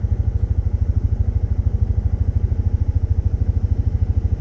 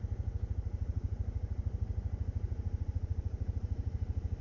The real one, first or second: first